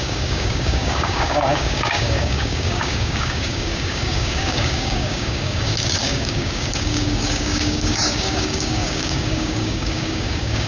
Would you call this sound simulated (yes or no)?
yes